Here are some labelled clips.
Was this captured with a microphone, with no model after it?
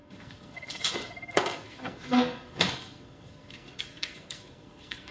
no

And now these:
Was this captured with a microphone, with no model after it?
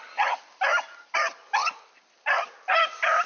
yes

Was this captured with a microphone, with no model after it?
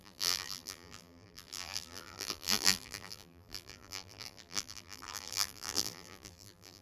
no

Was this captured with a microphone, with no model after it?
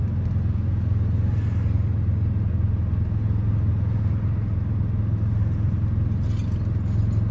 yes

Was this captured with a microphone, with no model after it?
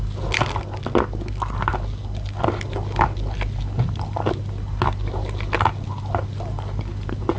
yes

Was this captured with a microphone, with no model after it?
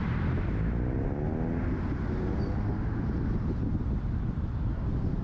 yes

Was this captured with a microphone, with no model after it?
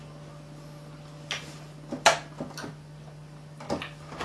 yes